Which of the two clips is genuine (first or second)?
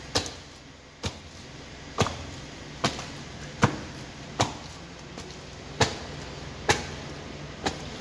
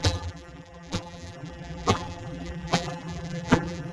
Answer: first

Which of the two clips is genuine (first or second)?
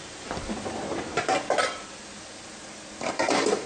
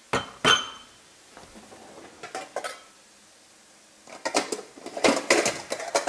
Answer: second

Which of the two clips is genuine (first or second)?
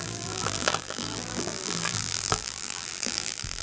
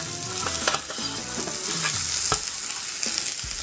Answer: second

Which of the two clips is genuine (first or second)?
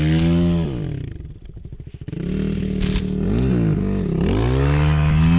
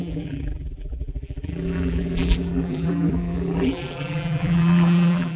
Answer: first